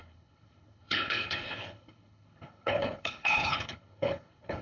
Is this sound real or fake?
fake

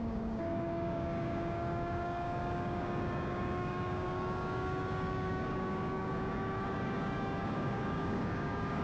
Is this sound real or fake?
fake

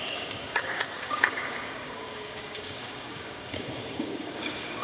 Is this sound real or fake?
fake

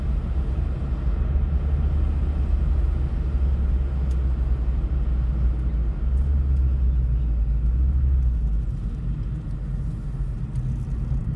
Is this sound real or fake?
real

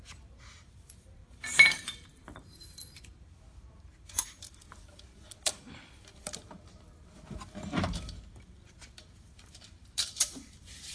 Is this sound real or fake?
fake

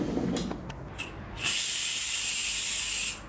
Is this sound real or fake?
real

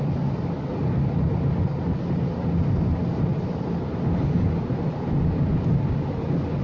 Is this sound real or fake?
real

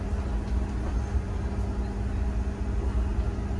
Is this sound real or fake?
real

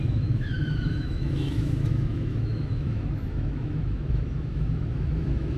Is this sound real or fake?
fake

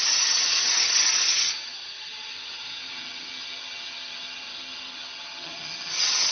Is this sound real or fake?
fake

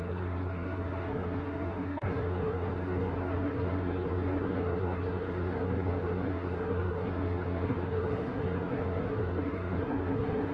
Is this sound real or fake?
fake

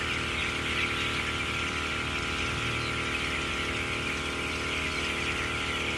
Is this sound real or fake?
real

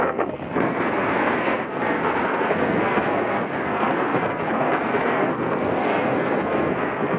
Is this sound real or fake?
fake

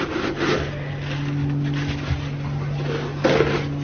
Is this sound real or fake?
real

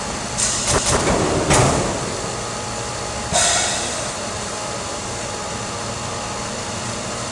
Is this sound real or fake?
fake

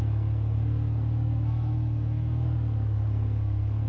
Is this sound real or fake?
fake